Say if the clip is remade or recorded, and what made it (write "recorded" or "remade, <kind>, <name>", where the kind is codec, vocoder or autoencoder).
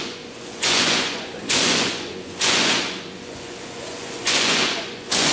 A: remade, vocoder, Vocos